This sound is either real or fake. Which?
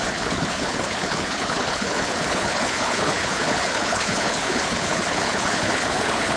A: fake